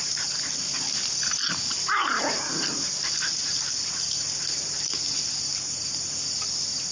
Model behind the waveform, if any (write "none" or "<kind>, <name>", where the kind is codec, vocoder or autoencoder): none